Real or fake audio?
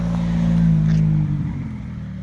real